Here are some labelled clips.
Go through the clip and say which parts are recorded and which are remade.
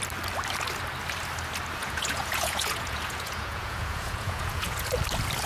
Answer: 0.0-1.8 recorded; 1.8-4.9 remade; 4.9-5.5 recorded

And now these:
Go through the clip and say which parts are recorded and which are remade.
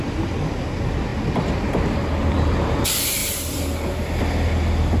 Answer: 0.0-3.2 recorded; 3.2-4.2 remade; 4.2-5.0 recorded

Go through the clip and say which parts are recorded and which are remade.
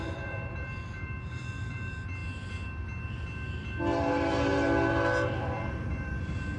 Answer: 0.0-2.2 remade; 2.2-4.1 recorded; 4.1-4.5 remade; 4.5-5.7 recorded; 5.7-6.6 remade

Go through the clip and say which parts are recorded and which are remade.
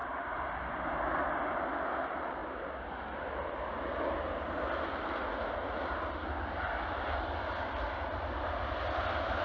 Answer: 0.0-0.9 remade; 0.9-9.4 recorded